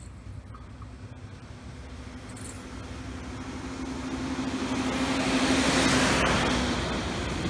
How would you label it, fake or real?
real